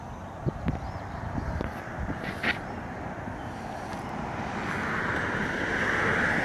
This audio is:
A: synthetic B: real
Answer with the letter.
B